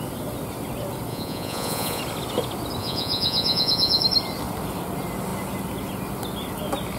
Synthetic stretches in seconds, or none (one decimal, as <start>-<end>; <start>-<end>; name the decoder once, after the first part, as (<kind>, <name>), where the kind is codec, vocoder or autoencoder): 1.1-2.0 (vocoder, Vocos); 2.8-4.0